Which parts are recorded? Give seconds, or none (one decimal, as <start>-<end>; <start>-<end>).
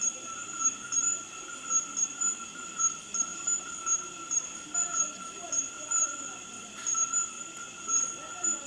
0.0-8.7